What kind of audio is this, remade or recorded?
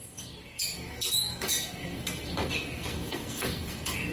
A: remade